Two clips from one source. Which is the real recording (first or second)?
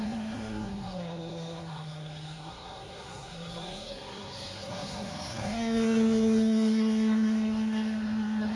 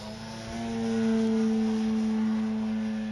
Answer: second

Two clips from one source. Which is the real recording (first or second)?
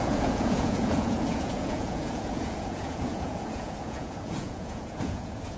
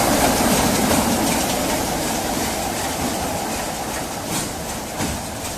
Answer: second